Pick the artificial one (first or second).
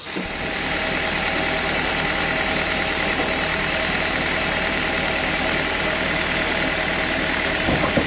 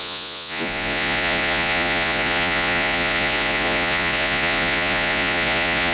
second